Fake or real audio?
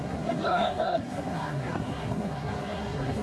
fake